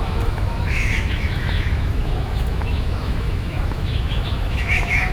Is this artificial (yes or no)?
yes